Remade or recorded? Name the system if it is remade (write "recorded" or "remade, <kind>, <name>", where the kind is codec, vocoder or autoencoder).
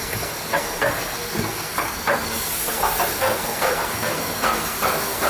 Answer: remade, codec, SNAC